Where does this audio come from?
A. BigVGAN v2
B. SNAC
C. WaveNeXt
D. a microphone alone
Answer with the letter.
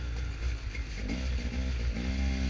D